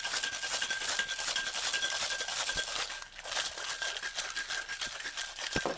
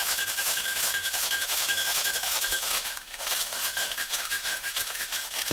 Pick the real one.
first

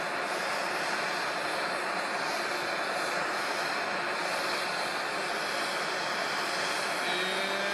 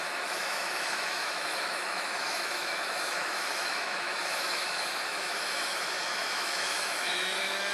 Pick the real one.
first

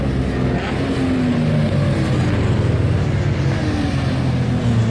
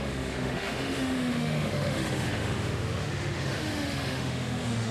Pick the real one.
first